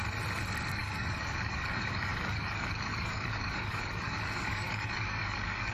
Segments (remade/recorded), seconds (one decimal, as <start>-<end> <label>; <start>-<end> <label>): 0.0-0.7 recorded; 0.7-5.7 remade